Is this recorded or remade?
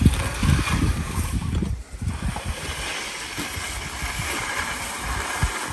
recorded